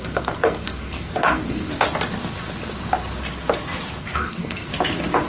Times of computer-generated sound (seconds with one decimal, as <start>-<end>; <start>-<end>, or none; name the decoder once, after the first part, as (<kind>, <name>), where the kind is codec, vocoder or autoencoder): 0.0-1.7 (codec, SNAC); 4.0-4.7